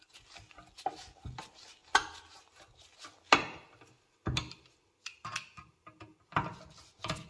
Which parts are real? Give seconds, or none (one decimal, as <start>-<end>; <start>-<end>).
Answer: 0.0-7.3